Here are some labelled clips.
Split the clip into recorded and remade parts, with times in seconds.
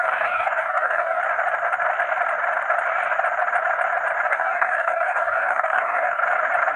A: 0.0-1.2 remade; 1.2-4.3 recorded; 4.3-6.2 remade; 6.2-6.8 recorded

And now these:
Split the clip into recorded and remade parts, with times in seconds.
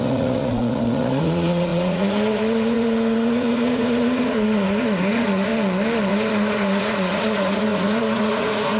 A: 0.0-5.5 remade; 5.5-6.1 recorded; 6.1-8.8 remade